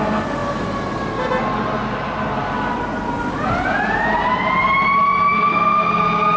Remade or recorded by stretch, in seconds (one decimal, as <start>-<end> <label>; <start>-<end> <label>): 0.0-5.5 recorded; 5.5-6.0 remade; 6.0-6.4 recorded

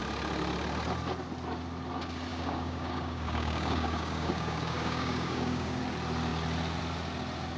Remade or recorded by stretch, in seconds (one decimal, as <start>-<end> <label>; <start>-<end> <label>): 0.0-2.3 recorded; 2.3-5.8 remade; 5.8-7.6 recorded

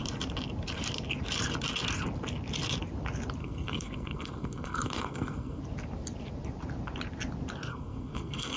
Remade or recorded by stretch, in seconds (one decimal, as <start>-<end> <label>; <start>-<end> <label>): 0.0-3.4 recorded; 3.4-5.6 remade; 5.6-7.7 recorded; 7.7-8.6 remade

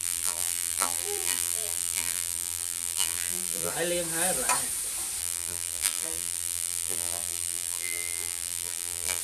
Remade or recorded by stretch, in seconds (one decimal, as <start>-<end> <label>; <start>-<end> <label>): 0.0-3.7 remade; 3.7-5.2 recorded; 5.2-9.2 remade

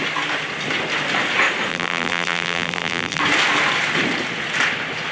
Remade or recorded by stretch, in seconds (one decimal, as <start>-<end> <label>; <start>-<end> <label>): 0.0-1.7 recorded; 1.7-3.2 remade; 3.2-5.1 recorded

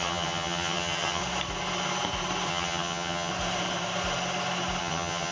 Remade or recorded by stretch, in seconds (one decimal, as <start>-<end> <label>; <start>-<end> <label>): 0.0-1.2 remade; 1.2-2.5 recorded; 2.5-3.3 remade; 3.3-4.8 recorded; 4.8-5.3 remade

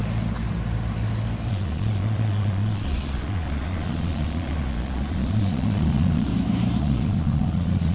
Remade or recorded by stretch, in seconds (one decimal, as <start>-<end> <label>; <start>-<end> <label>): 0.0-1.5 recorded; 1.5-6.3 remade; 6.3-6.8 recorded; 6.8-7.9 remade

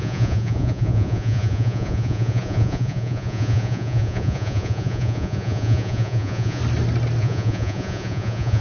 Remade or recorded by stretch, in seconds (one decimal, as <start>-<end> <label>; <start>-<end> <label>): 0.0-6.6 remade; 6.6-7.2 recorded; 7.2-8.6 remade